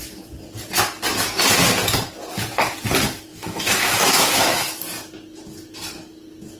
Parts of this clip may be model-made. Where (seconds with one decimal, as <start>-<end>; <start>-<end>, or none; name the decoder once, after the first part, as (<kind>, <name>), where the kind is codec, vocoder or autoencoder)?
3.3-4.8 (autoencoder, DAC-VAE)